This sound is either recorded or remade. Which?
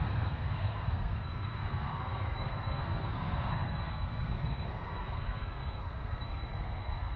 remade